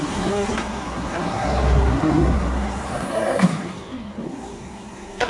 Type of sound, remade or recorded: remade